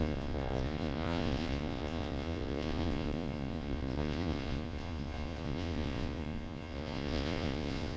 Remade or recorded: remade